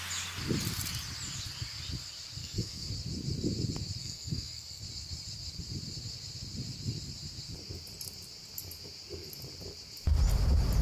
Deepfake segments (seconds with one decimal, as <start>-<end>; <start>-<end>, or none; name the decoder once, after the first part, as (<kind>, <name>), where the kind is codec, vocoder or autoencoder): 2.4-2.9 (codec, SNAC); 4.0-4.8